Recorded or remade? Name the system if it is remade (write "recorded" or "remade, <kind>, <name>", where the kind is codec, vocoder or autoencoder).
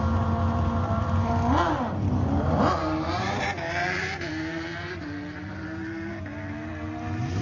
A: remade, vocoder, BigVGAN v2